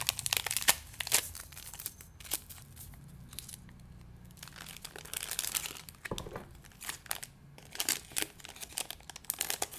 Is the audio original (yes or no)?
yes